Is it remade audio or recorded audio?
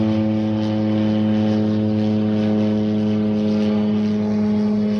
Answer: recorded